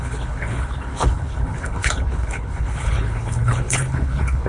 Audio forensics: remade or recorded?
remade